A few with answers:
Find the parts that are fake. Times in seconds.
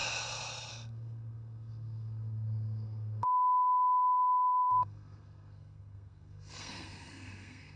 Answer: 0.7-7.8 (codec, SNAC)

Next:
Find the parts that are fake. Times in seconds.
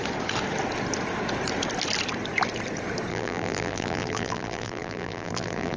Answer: 3.1-5.8 (vocoder, BigVGAN v2)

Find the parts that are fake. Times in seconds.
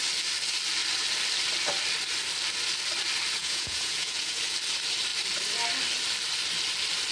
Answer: 3.4-4.4 (vocoder, Vocos)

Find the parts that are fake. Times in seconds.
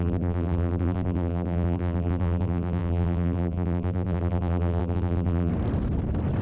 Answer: 0.0-5.5 (vocoder, BigVGAN v2)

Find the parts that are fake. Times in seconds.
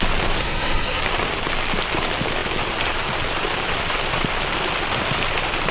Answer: 0.4-1.0 (codec, SNAC)